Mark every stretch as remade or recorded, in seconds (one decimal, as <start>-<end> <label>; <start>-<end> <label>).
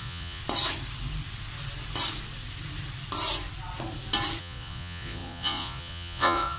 0.0-0.4 remade; 0.4-4.4 recorded; 4.4-6.6 remade